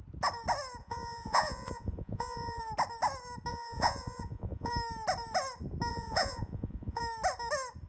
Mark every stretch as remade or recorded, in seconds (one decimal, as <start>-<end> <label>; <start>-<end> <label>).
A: 0.0-0.8 recorded; 0.8-2.6 remade; 2.6-3.5 recorded; 3.5-4.7 remade; 4.7-5.9 recorded; 5.9-7.0 remade; 7.0-7.9 recorded